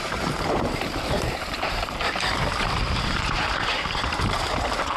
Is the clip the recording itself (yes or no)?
no